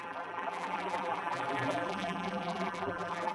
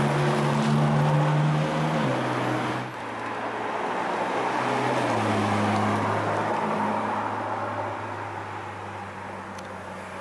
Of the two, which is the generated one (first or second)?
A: first